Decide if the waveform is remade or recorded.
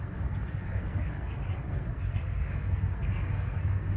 remade